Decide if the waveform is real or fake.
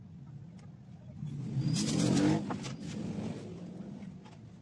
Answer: real